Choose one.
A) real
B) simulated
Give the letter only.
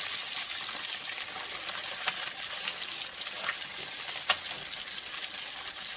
A